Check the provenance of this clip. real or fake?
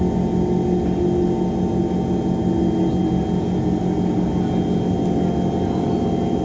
real